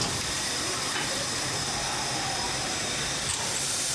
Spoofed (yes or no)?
no